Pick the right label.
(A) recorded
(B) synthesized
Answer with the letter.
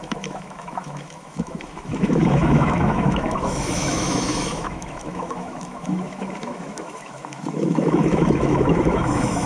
B